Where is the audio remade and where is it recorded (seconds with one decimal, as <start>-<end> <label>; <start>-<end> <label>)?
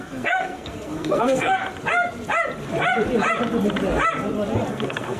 0.0-1.6 remade; 1.6-4.7 recorded; 4.7-5.2 remade